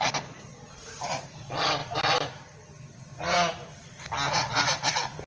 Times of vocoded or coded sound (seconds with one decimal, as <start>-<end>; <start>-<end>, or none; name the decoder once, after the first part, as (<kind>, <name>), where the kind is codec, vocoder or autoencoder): none